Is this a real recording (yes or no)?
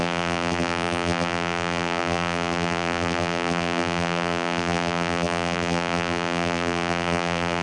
no